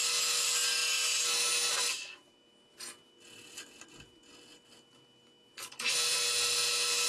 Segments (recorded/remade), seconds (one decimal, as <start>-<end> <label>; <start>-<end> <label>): 0.0-7.1 recorded